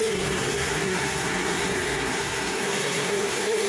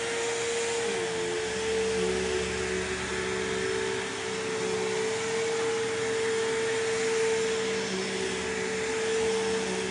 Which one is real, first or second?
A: second